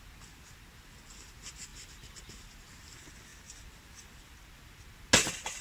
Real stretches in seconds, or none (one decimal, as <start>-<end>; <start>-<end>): 0.0-5.6